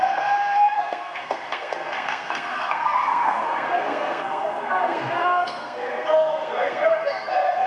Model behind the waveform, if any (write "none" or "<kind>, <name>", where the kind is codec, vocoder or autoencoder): codec, SNAC